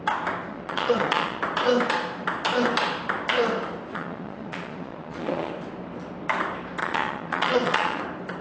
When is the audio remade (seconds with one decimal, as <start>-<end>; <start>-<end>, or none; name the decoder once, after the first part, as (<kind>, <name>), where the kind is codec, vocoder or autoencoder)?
0.5-1.4 (vocoder, Vocos); 3.9-5.5; 6.8-8.0